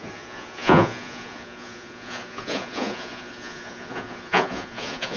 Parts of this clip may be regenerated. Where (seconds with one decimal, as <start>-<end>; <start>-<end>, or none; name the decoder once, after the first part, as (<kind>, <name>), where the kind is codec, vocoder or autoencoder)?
0.0-5.2 (vocoder, Vocos)